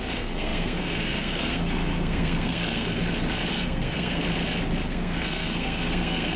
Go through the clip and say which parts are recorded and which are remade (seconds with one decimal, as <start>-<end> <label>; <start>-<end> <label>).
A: 0.0-3.0 remade; 3.0-3.5 recorded; 3.5-4.2 remade; 4.2-4.9 recorded; 4.9-6.4 remade